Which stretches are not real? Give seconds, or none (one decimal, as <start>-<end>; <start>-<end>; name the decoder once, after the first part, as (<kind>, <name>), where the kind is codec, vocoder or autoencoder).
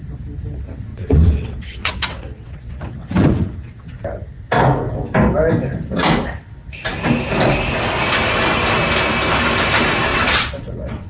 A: 0.9-3.9 (vocoder, WaveNeXt); 10.1-11.1